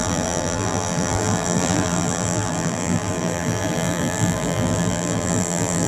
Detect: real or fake fake